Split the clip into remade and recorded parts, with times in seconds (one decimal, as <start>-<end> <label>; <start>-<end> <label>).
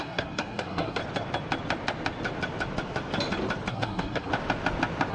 0.0-1.0 remade; 1.0-3.7 recorded; 3.7-4.3 remade; 4.3-5.1 recorded